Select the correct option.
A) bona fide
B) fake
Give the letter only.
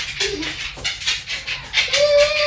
A